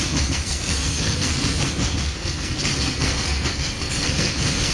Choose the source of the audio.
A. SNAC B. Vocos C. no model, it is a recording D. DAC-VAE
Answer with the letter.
A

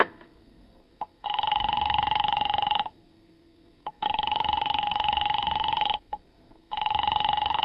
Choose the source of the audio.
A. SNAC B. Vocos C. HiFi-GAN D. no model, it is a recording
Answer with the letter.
A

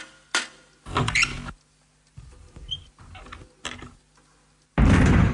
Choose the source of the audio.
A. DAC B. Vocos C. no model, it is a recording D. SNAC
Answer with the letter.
C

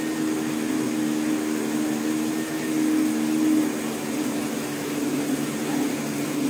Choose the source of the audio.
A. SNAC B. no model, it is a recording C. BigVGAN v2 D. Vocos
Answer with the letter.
B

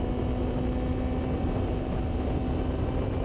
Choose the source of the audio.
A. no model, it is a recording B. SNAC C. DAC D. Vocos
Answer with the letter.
A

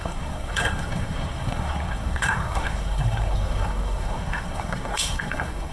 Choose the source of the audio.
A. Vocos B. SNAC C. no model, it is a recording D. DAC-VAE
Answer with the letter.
B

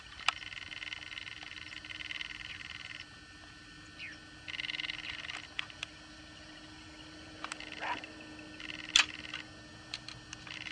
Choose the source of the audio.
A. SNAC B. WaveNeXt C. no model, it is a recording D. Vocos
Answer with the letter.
C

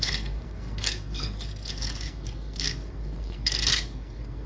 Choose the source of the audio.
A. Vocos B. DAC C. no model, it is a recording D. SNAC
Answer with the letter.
D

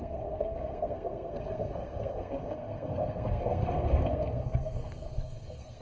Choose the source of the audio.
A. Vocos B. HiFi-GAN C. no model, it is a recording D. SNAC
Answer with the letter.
D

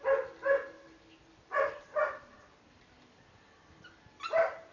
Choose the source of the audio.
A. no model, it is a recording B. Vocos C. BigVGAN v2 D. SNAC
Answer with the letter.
A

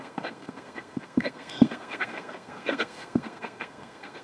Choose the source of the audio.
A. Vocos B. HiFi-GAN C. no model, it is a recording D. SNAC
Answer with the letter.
D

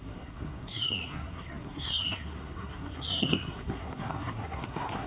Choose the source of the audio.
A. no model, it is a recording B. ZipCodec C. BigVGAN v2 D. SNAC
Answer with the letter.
D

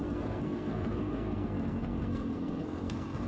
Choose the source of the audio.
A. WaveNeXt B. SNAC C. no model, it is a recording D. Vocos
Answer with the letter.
B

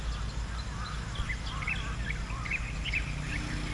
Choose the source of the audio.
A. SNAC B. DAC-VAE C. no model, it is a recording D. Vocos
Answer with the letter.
C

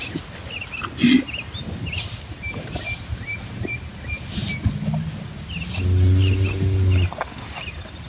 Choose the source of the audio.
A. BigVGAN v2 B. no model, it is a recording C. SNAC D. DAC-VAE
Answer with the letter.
B